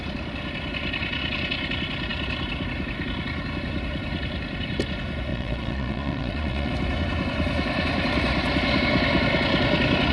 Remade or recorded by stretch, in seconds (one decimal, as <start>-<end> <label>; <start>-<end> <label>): 0.0-5.3 recorded; 5.3-6.7 remade; 6.7-10.1 recorded